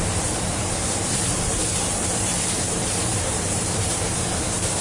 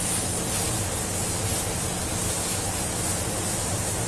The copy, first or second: first